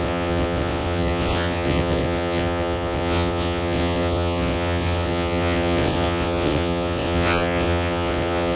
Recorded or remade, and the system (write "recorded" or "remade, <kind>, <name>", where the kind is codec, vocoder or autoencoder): remade, vocoder, WaveNeXt